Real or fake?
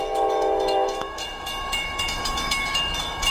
fake